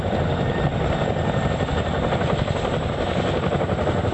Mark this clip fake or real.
real